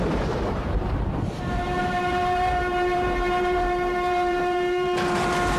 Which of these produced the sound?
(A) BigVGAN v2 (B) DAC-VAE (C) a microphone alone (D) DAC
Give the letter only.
A